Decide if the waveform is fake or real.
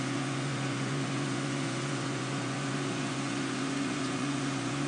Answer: fake